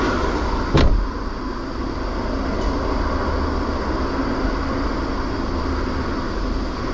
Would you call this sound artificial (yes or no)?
no